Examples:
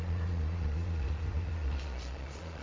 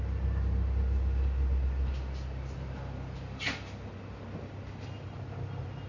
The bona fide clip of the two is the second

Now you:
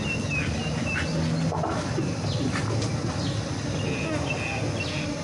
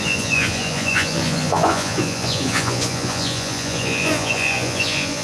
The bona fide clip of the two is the first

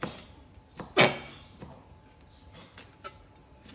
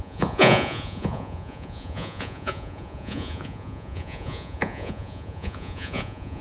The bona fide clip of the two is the first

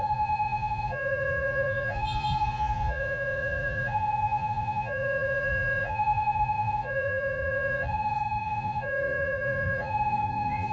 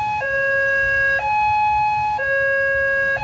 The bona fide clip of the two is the second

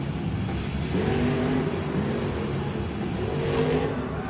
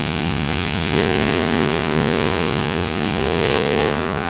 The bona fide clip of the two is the first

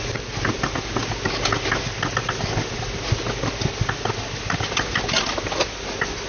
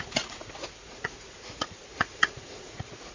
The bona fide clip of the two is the first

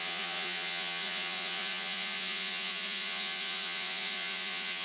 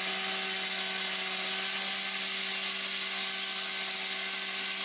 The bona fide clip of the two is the second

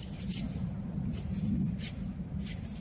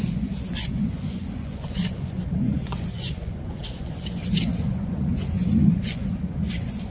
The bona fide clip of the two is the first